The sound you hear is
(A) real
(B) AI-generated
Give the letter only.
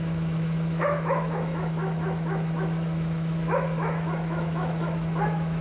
B